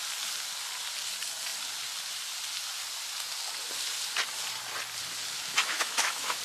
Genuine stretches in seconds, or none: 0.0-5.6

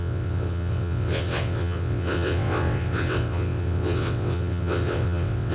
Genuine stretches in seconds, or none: none

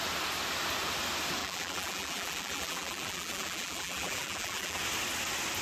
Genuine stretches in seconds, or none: 0.0-1.4; 4.8-5.6

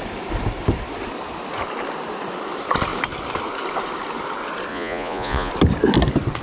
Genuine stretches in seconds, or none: 0.0-4.7; 5.5-6.4

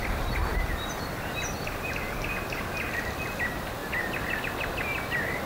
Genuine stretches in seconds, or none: 0.0-5.5

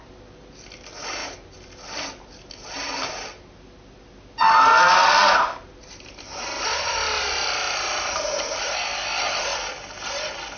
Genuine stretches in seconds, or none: 0.0-10.6